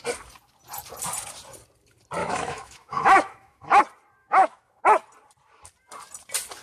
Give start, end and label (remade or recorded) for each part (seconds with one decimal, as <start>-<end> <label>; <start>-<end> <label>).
0.0-2.2 recorded; 2.2-3.8 remade; 3.8-4.2 recorded; 4.2-4.8 remade; 4.8-6.6 recorded